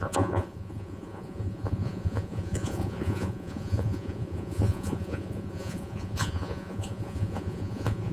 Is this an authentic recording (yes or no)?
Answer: no